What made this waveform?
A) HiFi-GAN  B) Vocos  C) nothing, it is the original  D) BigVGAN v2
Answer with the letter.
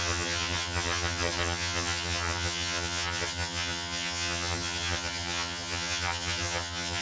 A